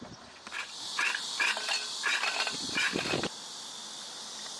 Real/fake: real